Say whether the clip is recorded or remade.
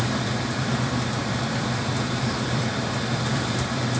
remade